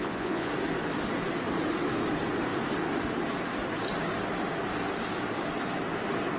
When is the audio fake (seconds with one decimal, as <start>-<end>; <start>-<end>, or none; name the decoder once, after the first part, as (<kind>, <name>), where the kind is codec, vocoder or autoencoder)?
0.0-0.5 (vocoder, Vocos)

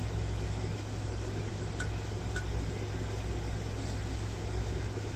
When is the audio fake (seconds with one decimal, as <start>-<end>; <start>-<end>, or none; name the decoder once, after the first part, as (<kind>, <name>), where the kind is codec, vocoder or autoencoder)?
0.0-1.1 (autoencoder, DAC-VAE); 1.5-2.2; 4.1-5.2

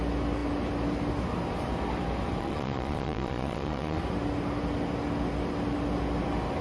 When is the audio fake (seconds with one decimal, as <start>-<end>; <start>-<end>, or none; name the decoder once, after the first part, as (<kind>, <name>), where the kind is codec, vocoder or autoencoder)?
2.4-4.0 (vocoder, Vocos)

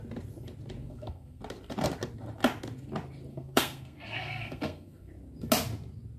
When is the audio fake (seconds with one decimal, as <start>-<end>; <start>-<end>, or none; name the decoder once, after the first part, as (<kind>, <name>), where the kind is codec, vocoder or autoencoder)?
0.8-1.4 (codec, SNAC); 3.3-5.1

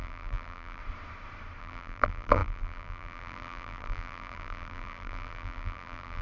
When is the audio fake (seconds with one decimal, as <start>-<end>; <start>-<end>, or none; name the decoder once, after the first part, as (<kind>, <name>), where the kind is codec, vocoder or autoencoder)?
0.0-0.8 (vocoder, BigVGAN v2); 1.6-6.2

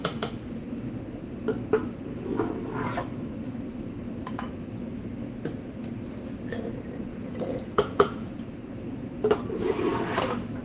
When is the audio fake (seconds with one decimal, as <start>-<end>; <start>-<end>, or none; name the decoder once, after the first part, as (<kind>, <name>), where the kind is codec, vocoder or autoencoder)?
7.1-8.3 (vocoder, Vocos)

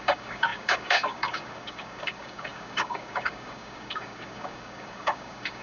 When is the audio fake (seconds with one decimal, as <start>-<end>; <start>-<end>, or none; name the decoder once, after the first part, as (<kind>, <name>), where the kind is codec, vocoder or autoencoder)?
0.0-5.6 (codec, DAC)